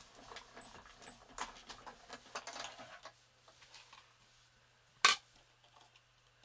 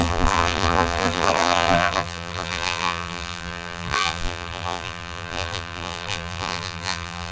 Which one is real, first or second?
first